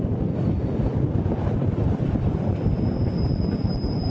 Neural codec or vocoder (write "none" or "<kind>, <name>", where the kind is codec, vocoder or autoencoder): none